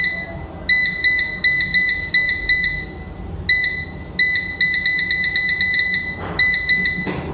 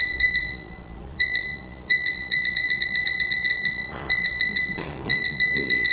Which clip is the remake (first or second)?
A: second